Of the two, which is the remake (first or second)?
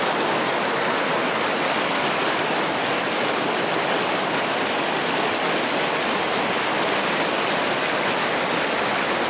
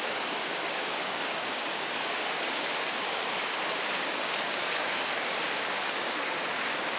second